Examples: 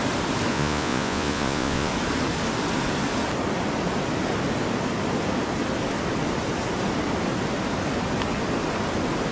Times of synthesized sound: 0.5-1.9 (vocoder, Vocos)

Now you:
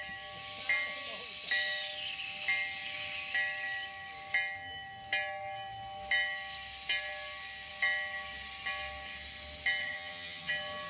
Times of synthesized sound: 9.8-10.5 (vocoder, HiFi-GAN)